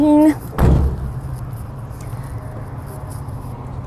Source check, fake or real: real